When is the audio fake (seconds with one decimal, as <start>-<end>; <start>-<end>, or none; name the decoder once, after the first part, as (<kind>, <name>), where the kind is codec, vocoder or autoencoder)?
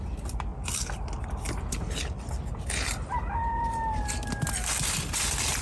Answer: none